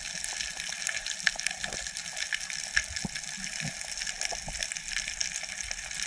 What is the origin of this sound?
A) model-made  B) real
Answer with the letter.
B